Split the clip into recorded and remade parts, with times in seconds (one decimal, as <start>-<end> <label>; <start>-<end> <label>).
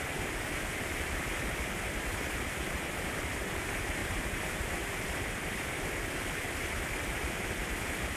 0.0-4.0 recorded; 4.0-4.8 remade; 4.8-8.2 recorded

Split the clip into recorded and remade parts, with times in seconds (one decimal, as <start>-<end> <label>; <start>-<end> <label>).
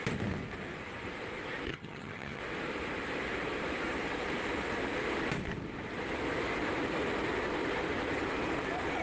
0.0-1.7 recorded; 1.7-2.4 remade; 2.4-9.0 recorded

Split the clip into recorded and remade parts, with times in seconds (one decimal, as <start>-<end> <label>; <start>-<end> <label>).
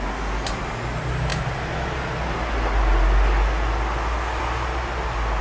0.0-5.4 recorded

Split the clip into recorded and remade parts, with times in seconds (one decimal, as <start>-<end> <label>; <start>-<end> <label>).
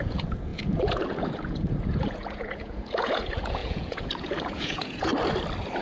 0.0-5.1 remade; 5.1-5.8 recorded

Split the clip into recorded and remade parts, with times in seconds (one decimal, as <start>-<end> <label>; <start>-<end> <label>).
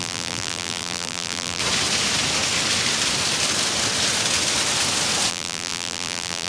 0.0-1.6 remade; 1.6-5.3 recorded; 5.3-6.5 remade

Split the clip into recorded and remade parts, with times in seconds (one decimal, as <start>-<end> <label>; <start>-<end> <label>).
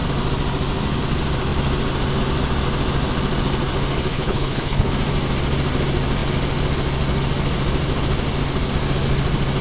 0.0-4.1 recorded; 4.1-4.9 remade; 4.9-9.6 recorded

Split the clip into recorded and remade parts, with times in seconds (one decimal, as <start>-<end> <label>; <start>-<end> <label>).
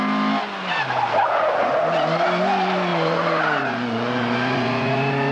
0.0-1.2 recorded; 1.2-1.7 remade; 1.7-2.9 recorded; 2.9-5.3 remade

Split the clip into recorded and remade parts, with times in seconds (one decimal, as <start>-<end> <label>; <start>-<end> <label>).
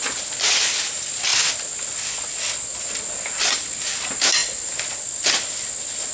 0.0-6.1 recorded